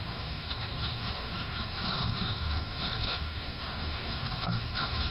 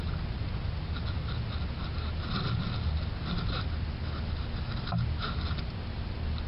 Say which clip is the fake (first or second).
first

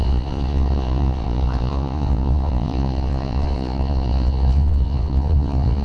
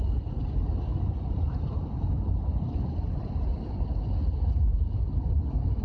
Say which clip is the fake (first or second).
first